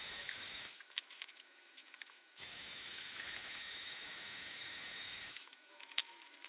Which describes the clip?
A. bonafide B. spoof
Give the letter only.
B